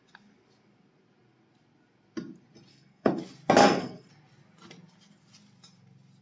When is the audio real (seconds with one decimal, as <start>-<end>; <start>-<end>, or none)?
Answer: 0.0-2.7; 3.2-3.6; 4.1-6.2

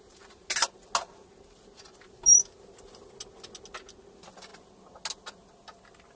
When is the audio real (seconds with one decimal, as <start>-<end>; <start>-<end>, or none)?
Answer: 0.0-6.2

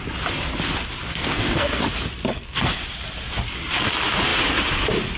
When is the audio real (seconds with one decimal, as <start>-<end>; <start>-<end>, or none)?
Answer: 0.0-1.1; 1.8-2.3; 2.8-5.2

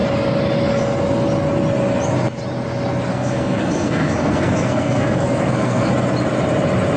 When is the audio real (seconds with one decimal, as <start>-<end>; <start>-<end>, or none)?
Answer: 0.0-3.1; 5.9-7.0

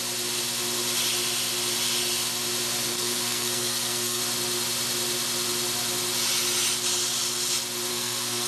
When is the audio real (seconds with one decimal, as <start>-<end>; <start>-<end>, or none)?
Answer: 0.0-2.9; 4.2-7.9

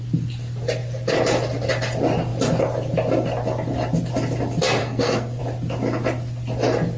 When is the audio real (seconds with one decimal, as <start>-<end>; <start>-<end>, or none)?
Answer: 0.0-4.8; 5.4-7.0

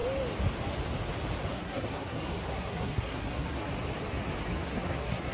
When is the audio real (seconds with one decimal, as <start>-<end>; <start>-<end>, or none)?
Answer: 0.0-1.5; 3.7-4.5